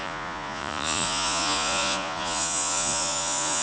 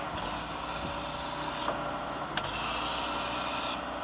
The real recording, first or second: second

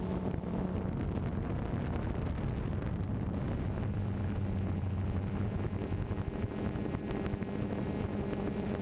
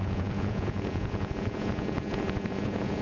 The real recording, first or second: first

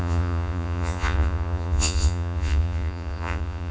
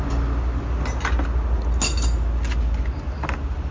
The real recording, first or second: second